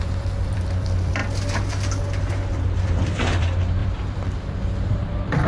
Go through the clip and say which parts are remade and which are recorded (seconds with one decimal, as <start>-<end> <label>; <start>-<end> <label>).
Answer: 0.0-1.2 remade; 1.2-2.5 recorded; 2.5-5.5 remade